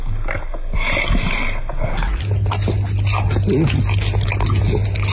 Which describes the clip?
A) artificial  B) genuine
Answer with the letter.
B